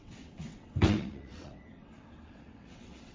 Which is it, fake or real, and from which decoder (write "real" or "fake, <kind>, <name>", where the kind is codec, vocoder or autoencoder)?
fake, vocoder, WaveNeXt